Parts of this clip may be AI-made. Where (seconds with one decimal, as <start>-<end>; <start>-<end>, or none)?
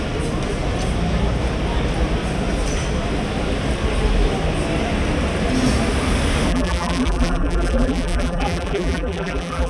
6.5-9.7